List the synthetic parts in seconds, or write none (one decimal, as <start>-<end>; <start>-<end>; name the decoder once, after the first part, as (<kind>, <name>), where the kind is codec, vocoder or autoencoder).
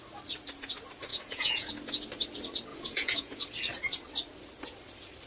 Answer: 1.1-1.7 (vocoder, Vocos); 2.7-3.4